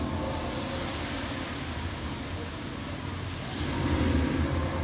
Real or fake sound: real